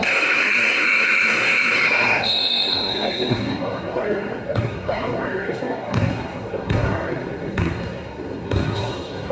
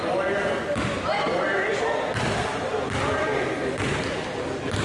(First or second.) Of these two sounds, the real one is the second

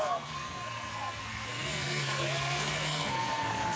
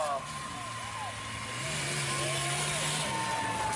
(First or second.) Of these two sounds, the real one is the second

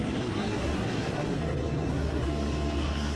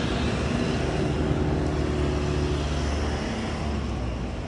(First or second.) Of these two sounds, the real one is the second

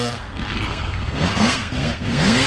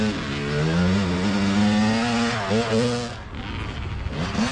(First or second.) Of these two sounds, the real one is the second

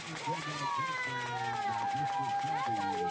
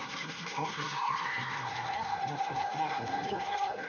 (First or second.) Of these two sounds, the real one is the first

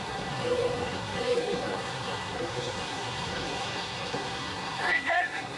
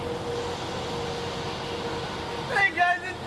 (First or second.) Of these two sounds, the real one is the second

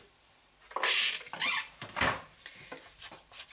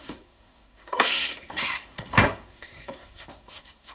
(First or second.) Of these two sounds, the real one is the first